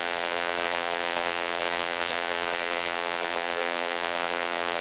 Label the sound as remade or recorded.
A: remade